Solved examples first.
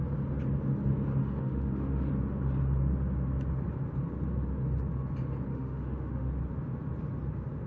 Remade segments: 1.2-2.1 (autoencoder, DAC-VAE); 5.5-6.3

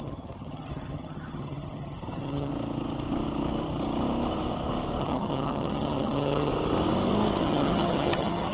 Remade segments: 0.0-2.5 (vocoder, HiFi-GAN); 5.0-6.5; 7.4-8.5

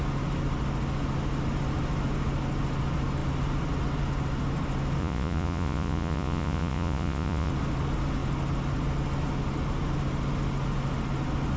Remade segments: 5.0-7.5 (vocoder, Vocos)

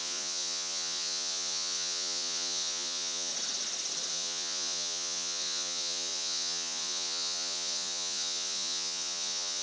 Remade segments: 0.0-3.3 (vocoder, Vocos); 4.1-9.6

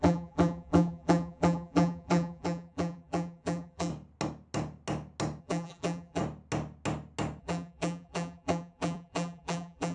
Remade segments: 0.0-3.9 (vocoder, BigVGAN v2); 5.4-6.2; 7.4-9.9

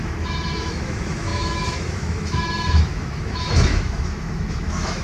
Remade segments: 0.0-5.0 (autoencoder, DAC-VAE)